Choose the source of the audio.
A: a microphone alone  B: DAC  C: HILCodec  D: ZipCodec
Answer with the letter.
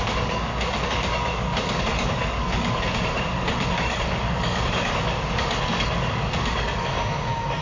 B